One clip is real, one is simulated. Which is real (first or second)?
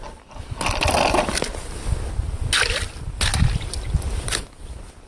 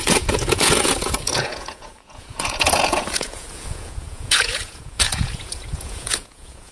first